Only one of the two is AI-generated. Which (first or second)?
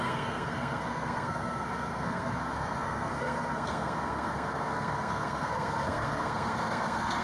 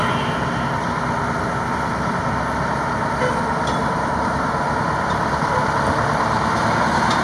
first